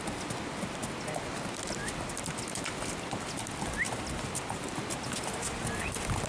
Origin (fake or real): real